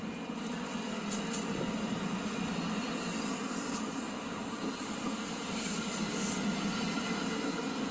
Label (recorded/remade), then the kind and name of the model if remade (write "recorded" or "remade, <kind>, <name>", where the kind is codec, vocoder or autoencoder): recorded